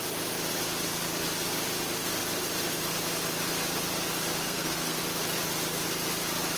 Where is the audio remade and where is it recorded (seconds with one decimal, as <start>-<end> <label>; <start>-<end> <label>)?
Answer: 0.0-4.4 recorded; 4.4-5.0 remade; 5.0-6.6 recorded